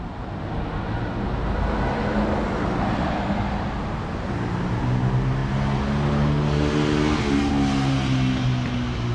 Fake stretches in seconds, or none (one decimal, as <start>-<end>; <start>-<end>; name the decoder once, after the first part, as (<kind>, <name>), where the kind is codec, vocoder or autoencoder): none